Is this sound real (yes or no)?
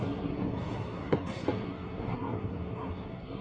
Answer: no